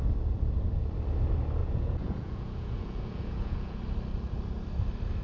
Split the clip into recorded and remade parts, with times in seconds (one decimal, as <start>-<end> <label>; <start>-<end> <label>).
0.0-1.6 recorded; 1.6-3.8 remade; 3.8-5.2 recorded